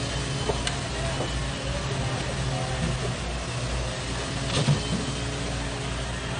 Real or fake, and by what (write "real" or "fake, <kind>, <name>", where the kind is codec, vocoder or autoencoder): real